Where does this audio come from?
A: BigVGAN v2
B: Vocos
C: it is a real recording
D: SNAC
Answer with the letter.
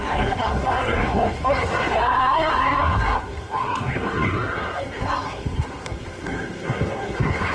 D